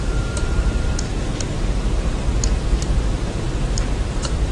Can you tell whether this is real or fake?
fake